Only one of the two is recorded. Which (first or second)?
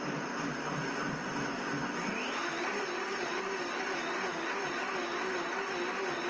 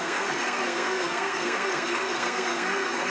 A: first